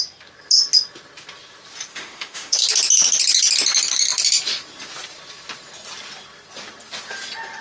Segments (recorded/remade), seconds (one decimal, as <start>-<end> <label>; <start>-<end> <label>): 0.0-1.9 recorded; 1.9-2.6 remade; 2.6-7.6 recorded